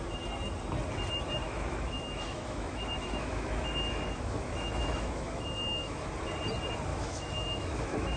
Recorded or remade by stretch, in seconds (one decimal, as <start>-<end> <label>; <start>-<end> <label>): 0.0-1.4 recorded; 1.4-6.1 remade; 6.1-6.9 recorded; 6.9-8.2 remade